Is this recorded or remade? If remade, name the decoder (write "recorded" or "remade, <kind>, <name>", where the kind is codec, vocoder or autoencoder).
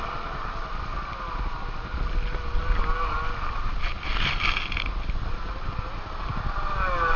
recorded